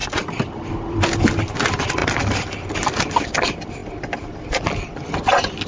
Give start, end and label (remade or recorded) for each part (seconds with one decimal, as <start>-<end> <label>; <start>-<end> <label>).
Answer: 0.0-0.9 recorded; 0.9-5.7 remade